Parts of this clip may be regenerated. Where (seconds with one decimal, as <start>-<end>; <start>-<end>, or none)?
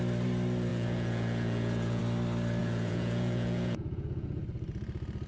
0.7-2.0; 2.6-4.4